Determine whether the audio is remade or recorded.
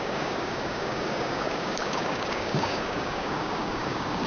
remade